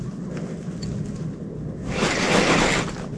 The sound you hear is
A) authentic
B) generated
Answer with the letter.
A